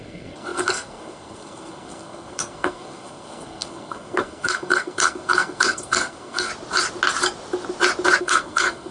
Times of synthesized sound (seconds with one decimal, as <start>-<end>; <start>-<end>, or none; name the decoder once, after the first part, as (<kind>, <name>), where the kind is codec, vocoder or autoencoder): 0.0-6.5 (codec, SNAC); 8.2-8.9